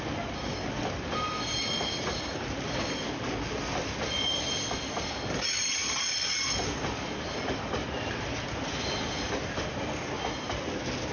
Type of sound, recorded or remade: recorded